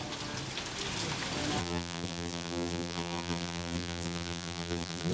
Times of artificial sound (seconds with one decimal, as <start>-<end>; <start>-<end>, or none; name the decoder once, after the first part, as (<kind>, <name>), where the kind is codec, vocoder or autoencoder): 1.6-5.1 (vocoder, BigVGAN v2)